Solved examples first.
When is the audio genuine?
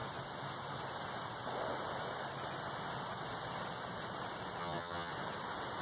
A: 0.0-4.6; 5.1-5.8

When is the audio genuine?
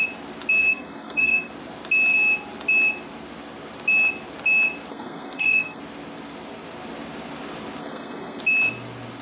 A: 0.0-0.6; 1.5-4.9; 5.8-7.8; 8.4-9.2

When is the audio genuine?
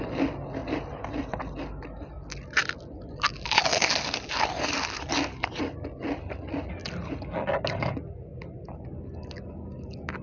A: 0.0-0.6; 2.1-2.6; 5.6-10.2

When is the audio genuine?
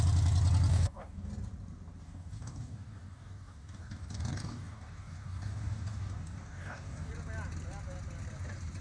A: 0.0-0.7; 1.3-2.0; 7.1-8.8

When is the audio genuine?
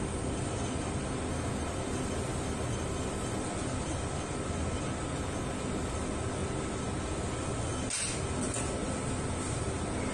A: 0.0-10.1